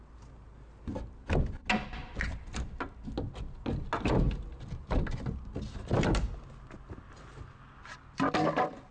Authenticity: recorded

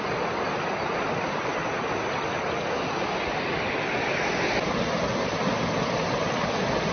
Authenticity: recorded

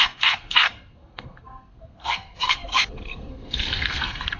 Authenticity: remade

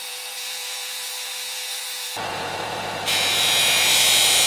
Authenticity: remade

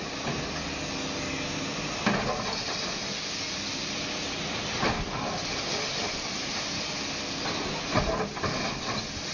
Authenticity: recorded